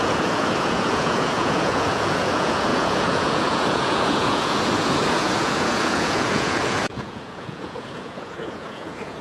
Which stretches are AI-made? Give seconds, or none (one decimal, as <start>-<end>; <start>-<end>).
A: 0.0-9.2

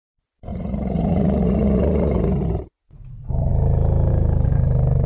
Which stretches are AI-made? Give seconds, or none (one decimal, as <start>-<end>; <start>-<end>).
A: 0.5-2.6

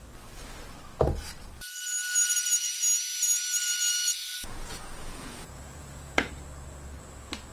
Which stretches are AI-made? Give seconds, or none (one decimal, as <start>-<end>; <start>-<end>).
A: 4.3-6.3

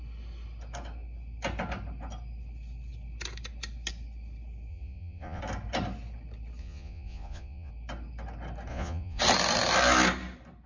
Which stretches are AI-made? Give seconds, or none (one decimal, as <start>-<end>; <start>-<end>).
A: 4.7-5.4; 6.6-7.7; 8.7-9.2

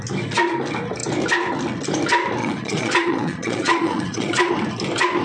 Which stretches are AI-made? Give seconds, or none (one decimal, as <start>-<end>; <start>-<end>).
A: 2.4-4.5